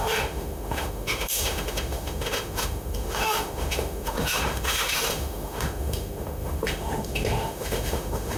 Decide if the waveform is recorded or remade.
remade